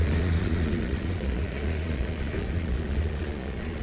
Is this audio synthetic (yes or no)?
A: yes